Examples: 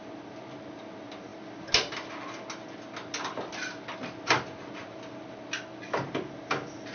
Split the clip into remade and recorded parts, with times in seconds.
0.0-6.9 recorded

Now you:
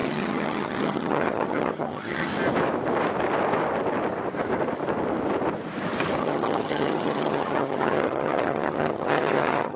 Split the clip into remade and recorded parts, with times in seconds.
0.0-2.3 remade; 2.3-6.2 recorded; 6.2-9.8 remade

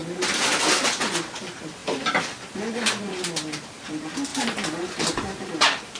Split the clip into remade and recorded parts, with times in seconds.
0.0-6.0 recorded

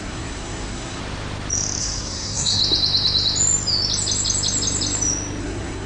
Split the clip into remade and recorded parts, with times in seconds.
0.0-1.0 remade; 1.0-1.8 recorded; 1.8-2.6 remade; 2.6-5.4 recorded; 5.4-5.9 remade

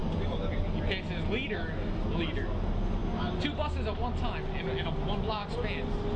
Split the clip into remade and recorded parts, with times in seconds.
0.0-6.2 recorded

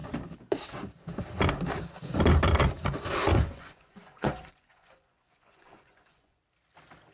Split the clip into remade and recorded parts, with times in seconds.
0.0-3.3 recorded; 3.3-6.4 remade; 6.4-7.1 recorded

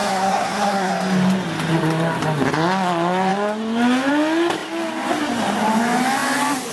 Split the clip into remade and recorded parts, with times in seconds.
0.0-0.9 remade; 0.9-6.7 recorded

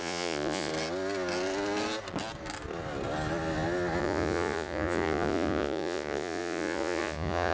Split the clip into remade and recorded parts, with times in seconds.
0.0-0.7 remade; 0.7-4.0 recorded; 4.0-7.5 remade